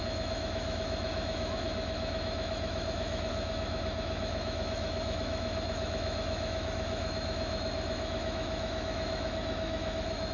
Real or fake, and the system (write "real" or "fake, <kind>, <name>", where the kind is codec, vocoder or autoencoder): fake, autoencoder, DAC-VAE